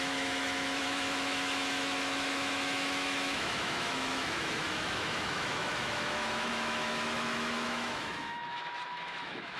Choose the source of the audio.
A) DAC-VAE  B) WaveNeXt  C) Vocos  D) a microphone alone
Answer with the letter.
A